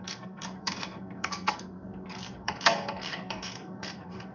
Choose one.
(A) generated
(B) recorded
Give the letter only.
A